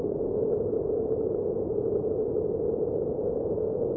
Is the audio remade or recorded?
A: remade